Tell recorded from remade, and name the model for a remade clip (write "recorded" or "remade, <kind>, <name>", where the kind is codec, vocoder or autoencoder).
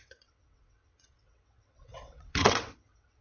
remade, vocoder, WaveNeXt